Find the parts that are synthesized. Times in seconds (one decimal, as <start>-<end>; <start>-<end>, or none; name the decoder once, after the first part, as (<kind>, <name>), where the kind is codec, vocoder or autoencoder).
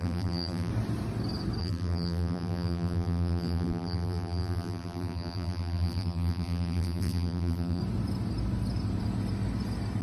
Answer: 0.0-0.7 (vocoder, BigVGAN v2); 1.6-7.8